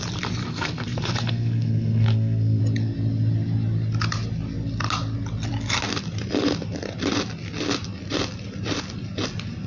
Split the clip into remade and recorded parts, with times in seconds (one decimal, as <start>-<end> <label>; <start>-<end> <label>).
0.0-0.4 recorded; 0.4-2.6 remade; 2.6-9.7 recorded